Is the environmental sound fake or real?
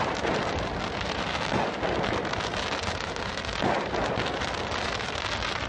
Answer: real